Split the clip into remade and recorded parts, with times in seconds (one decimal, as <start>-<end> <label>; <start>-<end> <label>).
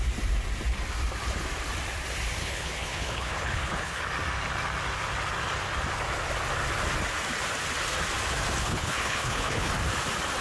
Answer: 0.0-2.4 recorded; 2.4-4.0 remade; 4.0-8.6 recorded; 8.6-9.7 remade; 9.7-10.4 recorded